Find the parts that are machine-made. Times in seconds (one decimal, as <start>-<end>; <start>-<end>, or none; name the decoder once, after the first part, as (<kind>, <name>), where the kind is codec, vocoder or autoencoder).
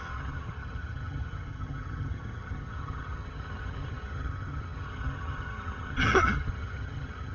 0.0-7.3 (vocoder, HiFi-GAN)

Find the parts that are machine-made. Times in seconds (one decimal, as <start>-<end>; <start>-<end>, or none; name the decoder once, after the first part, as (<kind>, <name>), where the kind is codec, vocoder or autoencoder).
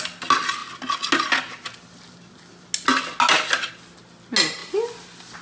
none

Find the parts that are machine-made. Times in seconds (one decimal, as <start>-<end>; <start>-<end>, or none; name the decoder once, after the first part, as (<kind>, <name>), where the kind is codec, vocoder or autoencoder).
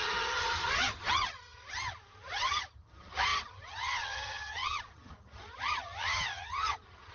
0.0-7.1 (vocoder, HiFi-GAN)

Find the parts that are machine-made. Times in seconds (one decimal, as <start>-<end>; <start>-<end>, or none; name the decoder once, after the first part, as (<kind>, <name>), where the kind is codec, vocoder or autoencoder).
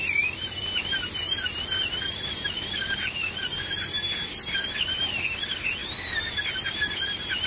none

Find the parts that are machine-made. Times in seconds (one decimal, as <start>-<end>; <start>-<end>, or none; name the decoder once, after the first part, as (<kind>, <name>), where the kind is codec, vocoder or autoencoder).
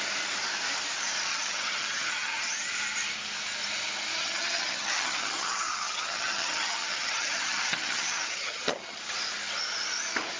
1.3-2.7 (vocoder, HiFi-GAN); 4.2-9.0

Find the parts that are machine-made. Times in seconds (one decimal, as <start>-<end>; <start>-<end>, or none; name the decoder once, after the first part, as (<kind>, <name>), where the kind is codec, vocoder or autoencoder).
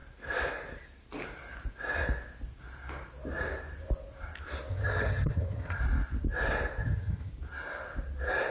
4.7-5.8 (vocoder, HiFi-GAN); 6.8-7.3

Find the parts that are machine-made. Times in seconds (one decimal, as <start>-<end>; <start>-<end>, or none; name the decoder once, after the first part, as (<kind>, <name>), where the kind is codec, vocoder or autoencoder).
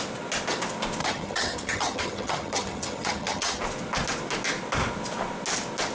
1.0-3.6 (vocoder, HiFi-GAN)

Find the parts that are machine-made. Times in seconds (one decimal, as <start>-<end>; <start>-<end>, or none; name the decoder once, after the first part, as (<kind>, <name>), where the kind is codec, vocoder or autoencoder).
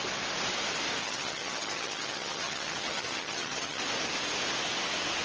1.0-3.8 (vocoder, HiFi-GAN)